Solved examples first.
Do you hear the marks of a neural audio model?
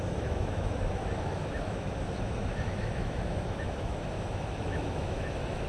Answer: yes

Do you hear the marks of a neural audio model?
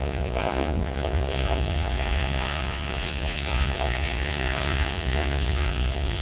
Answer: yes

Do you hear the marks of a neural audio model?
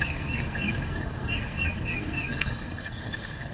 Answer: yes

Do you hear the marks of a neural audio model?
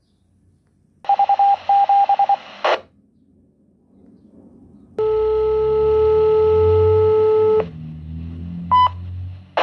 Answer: no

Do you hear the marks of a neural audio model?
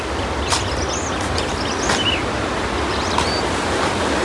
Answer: no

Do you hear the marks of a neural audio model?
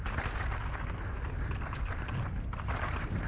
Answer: no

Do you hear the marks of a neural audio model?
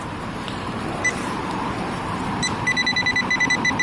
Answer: yes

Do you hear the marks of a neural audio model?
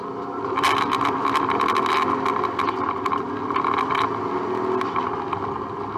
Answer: no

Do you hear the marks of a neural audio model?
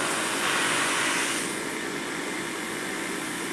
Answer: yes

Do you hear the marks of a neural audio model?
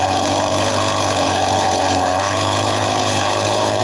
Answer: yes